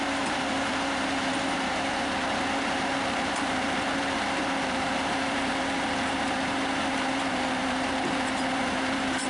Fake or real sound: fake